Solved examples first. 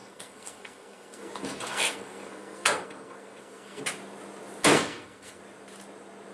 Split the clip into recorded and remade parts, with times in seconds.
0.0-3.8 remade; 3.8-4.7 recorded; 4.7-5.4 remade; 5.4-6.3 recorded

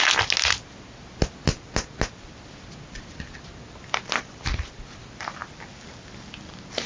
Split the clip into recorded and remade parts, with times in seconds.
0.0-6.9 recorded

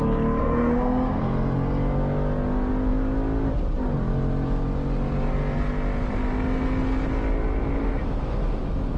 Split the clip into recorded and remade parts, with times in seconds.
0.0-0.4 recorded; 0.4-1.2 remade; 1.2-9.0 recorded

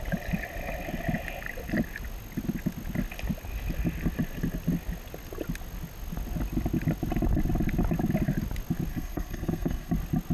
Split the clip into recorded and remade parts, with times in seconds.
0.0-8.9 recorded; 8.9-9.9 remade; 9.9-10.3 recorded

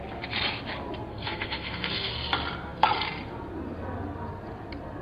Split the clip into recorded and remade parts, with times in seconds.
0.0-1.1 recorded; 1.1-2.1 remade; 2.1-5.0 recorded

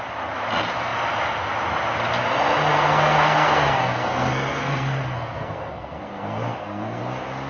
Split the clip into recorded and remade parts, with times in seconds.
0.0-2.7 recorded; 2.7-7.0 remade; 7.0-7.5 recorded

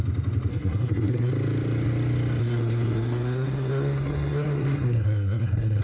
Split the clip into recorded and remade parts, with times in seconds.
0.0-0.5 recorded; 0.5-1.3 remade; 1.3-2.4 recorded; 2.4-5.8 remade